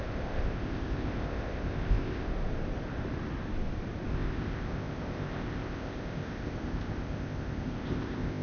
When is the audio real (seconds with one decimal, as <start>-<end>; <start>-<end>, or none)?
2.3-4.1